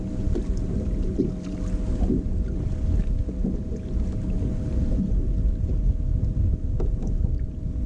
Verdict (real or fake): real